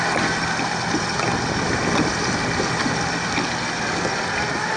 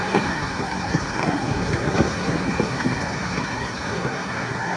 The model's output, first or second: second